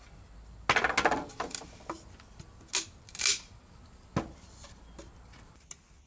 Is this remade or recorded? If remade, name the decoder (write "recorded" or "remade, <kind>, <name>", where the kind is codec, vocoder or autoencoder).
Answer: recorded